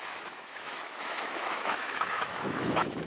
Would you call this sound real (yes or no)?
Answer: no